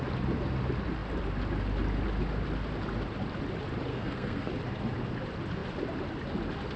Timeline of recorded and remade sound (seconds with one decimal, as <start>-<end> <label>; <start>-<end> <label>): 0.0-3.9 recorded; 3.9-4.5 remade; 4.5-6.8 recorded